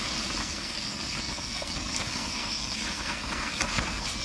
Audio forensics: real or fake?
fake